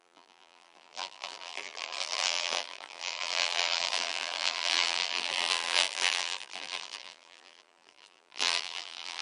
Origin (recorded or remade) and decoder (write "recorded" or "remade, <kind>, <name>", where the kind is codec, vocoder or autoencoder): remade, vocoder, BigVGAN v2